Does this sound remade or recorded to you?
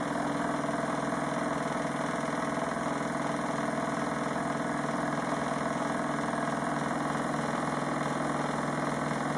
recorded